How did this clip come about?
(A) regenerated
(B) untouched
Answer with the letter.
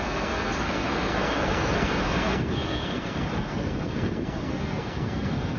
A